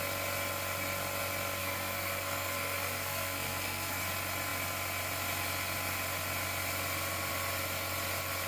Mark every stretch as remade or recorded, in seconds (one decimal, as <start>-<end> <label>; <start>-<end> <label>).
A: 0.0-1.6 recorded; 1.6-4.0 remade; 4.0-8.5 recorded